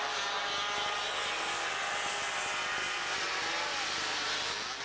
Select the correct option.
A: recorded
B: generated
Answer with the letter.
A